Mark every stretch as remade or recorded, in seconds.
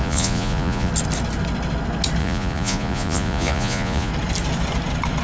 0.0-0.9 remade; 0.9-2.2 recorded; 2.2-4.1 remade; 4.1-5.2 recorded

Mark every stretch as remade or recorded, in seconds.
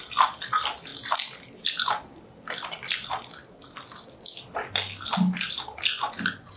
0.0-6.6 recorded